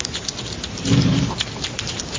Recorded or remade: recorded